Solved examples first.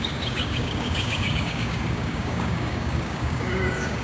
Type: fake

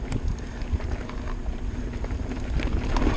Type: real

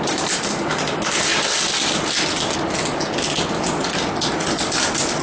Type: real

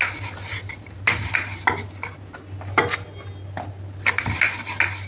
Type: real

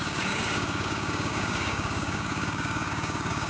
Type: fake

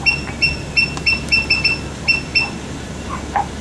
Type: real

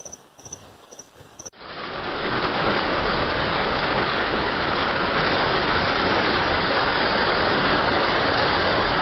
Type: fake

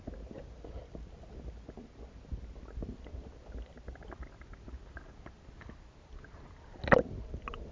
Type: real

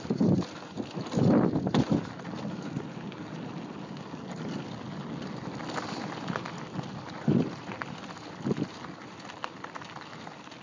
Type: real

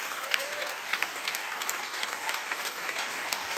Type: fake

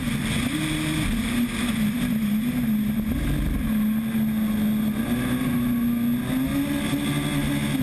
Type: real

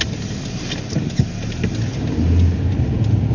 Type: real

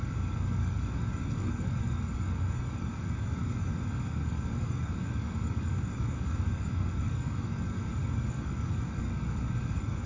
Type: fake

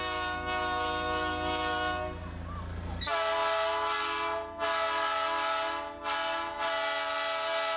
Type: real